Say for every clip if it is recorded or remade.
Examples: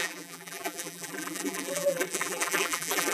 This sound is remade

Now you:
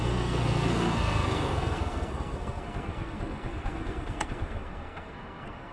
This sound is remade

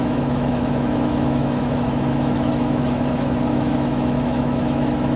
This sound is remade